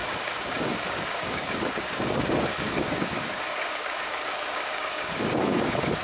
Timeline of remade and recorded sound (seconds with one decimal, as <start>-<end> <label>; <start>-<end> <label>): 0.0-6.0 remade